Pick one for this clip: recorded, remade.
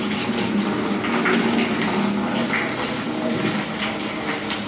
recorded